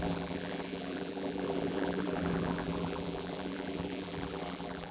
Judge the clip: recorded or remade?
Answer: remade